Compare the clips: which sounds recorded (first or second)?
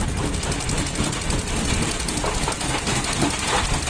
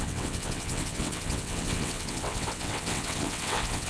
first